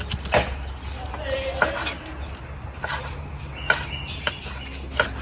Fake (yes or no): no